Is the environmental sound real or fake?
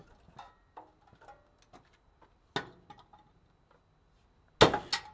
real